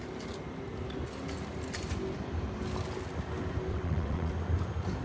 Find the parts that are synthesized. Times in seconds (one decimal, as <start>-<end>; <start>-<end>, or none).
3.7-4.3